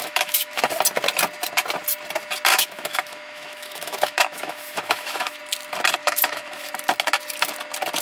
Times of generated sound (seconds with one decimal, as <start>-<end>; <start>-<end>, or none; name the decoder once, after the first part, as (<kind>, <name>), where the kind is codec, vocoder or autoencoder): 0.0-0.6 (autoencoder, DAC-VAE); 2.5-5.4; 6.0-6.7